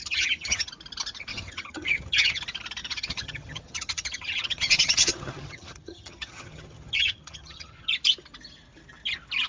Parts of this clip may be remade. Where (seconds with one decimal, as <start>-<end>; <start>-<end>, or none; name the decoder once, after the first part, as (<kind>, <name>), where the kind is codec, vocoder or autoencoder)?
0.0-0.7 (vocoder, HiFi-GAN); 1.3-2.4; 2.8-7.9